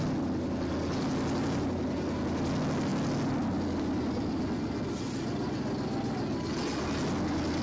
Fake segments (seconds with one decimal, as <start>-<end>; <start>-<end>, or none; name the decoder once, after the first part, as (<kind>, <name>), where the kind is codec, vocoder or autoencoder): none